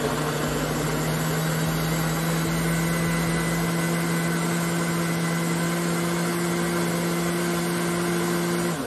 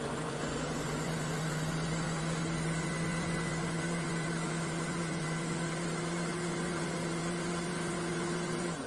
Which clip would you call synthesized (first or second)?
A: second